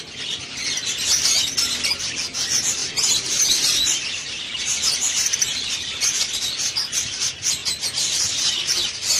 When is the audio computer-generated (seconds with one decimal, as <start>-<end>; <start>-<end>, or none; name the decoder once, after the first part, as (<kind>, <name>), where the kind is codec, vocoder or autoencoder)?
2.8-5.7 (vocoder, BigVGAN v2); 7.6-8.7